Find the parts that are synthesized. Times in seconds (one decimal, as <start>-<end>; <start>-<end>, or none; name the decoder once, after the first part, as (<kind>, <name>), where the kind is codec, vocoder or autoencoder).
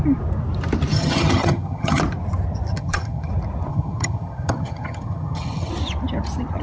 0.9-2.0 (vocoder, HiFi-GAN); 2.8-3.3; 3.7-5.7